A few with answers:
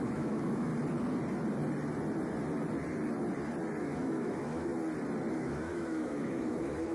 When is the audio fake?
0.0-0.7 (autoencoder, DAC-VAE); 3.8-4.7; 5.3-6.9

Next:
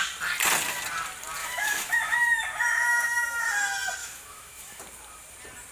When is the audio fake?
1.4-2.4 (autoencoder, DAC-VAE); 2.9-3.4; 4.0-4.8

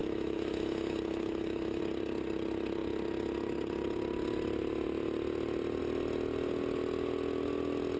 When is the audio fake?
0.0-1.8 (autoencoder, DAC-VAE)

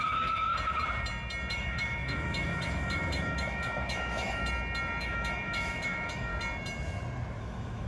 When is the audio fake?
0.0-0.5 (autoencoder, DAC-VAE); 1.5-4.4; 5.0-6.3; 7.4-7.9

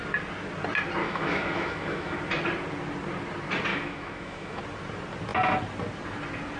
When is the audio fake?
1.0-2.2 (autoencoder, DAC-VAE); 3.7-4.6